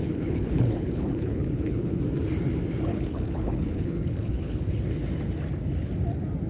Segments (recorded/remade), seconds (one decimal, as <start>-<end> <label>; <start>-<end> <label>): 0.0-2.0 remade; 2.0-2.9 recorded; 2.9-4.8 remade; 4.8-6.5 recorded